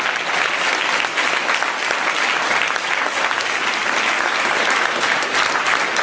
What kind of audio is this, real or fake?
real